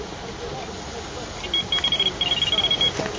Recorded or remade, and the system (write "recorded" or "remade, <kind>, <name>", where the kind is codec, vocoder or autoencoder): recorded